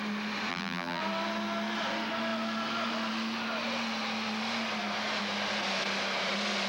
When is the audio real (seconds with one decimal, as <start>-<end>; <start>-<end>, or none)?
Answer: 0.0-0.5; 1.0-6.7